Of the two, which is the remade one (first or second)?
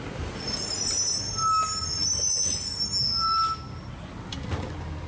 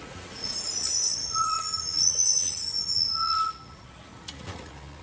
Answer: second